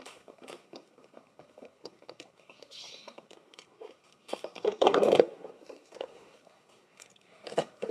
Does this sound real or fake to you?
fake